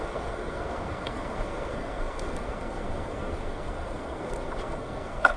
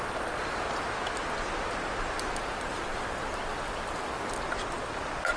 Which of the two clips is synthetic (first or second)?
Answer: first